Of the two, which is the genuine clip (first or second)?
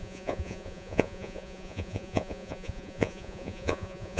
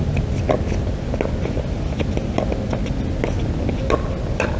second